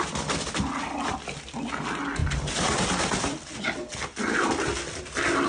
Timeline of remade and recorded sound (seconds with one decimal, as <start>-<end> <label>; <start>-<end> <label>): 0.0-5.5 recorded